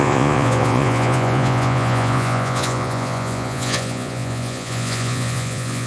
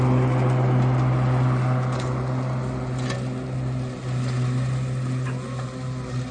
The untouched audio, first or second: second